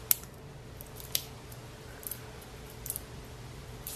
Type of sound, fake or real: real